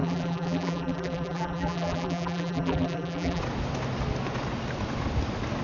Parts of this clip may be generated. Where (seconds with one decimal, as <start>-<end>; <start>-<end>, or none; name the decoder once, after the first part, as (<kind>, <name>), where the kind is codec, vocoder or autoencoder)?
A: 0.0-3.4 (vocoder, BigVGAN v2)